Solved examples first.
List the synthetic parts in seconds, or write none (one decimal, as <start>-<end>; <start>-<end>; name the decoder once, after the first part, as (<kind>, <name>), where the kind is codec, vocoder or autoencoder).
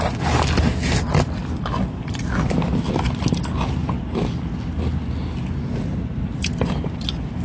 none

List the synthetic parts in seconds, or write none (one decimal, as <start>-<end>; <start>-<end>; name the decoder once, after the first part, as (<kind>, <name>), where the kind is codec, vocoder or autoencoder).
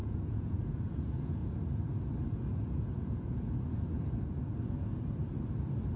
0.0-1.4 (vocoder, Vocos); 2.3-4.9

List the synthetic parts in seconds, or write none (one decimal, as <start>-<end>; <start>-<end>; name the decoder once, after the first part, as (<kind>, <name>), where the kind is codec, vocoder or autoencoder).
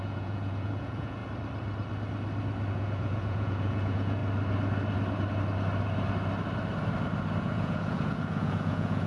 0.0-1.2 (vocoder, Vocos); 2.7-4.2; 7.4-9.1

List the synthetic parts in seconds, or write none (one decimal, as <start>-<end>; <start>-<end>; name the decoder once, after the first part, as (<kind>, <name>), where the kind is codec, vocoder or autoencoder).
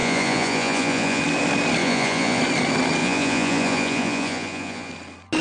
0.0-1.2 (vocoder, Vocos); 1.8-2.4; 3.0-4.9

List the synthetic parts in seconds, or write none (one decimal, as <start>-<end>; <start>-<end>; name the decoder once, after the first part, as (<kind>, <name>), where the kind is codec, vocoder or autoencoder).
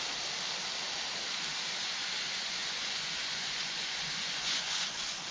2.0-5.3 (vocoder, Vocos)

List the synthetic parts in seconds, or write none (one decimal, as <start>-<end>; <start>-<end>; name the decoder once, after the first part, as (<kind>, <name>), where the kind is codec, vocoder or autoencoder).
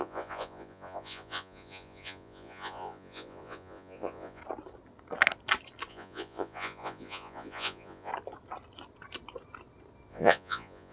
0.0-4.4 (vocoder, Vocos); 5.9-8.1; 10.1-10.9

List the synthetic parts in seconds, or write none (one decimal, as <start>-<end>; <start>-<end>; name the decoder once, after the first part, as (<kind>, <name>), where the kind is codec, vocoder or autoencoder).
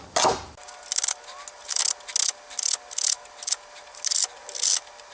none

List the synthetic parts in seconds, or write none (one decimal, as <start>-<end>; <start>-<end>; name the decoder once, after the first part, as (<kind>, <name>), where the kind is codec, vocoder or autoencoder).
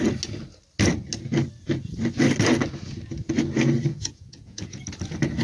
3.9-4.8 (vocoder, Vocos)